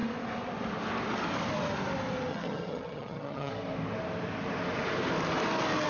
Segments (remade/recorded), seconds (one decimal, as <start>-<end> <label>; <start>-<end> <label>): 0.0-2.3 recorded; 2.3-3.5 remade; 3.5-5.9 recorded